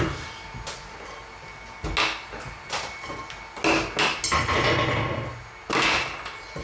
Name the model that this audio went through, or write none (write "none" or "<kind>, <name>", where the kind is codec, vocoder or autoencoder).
none